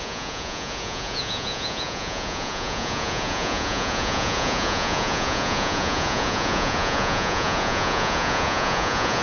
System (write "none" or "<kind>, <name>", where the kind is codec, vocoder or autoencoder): vocoder, Vocos